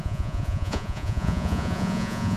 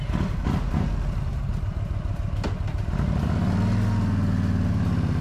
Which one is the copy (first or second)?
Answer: first